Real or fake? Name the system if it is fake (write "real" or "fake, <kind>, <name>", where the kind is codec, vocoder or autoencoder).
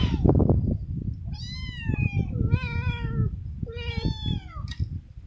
real